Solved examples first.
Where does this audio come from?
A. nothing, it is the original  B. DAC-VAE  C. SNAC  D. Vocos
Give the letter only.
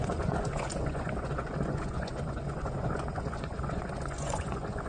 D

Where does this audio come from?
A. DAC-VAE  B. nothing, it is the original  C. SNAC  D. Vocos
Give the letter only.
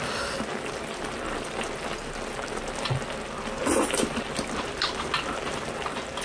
B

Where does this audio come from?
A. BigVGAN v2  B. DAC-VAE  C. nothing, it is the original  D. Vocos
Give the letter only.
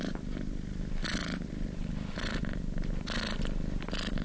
C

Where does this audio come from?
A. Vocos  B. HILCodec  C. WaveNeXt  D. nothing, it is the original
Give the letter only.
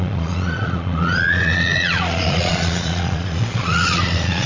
A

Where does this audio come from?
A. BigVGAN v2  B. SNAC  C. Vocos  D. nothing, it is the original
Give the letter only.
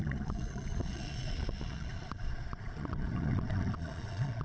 C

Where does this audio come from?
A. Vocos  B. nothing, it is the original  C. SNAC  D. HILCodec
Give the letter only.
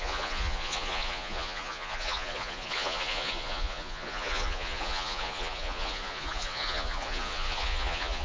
A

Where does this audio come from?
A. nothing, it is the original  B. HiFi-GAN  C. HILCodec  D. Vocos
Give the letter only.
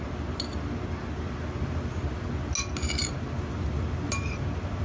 A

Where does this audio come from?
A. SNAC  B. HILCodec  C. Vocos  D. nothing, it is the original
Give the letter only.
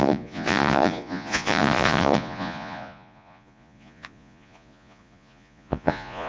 C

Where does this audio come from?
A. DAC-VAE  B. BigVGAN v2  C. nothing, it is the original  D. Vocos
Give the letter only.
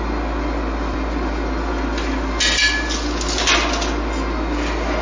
C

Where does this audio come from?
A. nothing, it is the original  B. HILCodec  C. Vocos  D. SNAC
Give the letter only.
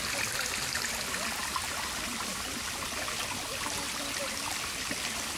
A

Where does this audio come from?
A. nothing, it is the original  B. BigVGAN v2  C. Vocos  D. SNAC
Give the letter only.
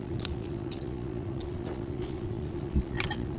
C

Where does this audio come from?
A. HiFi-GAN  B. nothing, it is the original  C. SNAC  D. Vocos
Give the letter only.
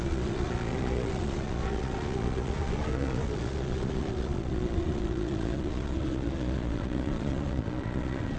D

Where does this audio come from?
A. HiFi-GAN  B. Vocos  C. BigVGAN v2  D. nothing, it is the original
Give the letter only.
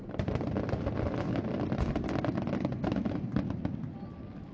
D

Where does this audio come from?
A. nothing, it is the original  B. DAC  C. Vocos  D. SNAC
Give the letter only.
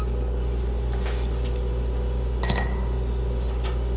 A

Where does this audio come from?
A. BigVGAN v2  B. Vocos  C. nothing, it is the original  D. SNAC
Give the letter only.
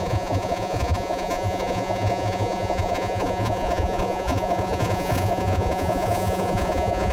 B